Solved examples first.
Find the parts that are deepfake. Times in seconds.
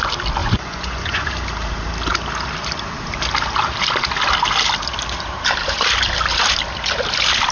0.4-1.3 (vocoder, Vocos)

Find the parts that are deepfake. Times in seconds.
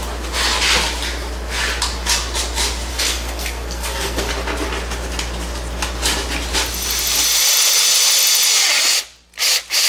2.9-4.3 (codec, SNAC)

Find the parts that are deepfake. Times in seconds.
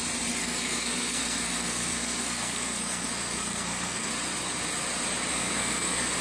0.4-4.1 (codec, SNAC); 5.3-6.2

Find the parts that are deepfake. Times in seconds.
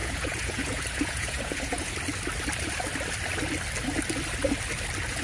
0.0-1.9 (vocoder, Vocos)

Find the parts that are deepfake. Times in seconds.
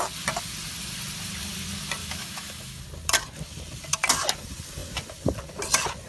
2.0-2.8 (autoencoder, DAC-VAE)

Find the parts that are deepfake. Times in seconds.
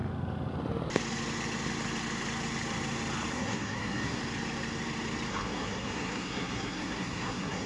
3.3-4.2 (codec, SNAC); 5.3-7.7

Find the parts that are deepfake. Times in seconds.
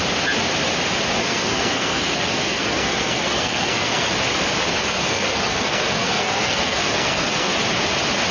1.2-4.1 (codec, SNAC); 4.7-7.5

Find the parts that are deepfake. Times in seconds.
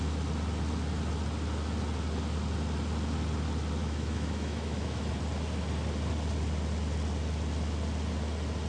3.8-5.1 (autoencoder, DAC-VAE)